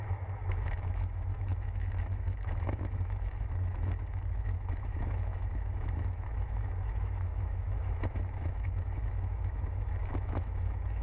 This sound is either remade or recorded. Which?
remade